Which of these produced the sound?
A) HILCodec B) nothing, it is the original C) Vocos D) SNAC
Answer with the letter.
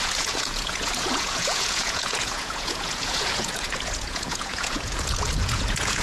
C